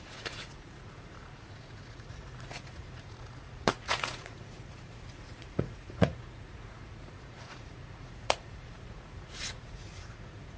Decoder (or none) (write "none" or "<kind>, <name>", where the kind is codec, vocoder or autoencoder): vocoder, Vocos